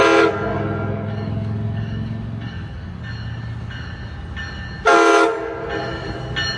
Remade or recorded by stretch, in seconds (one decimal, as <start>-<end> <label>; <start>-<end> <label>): 0.0-0.5 recorded; 0.5-3.0 remade; 3.0-6.6 recorded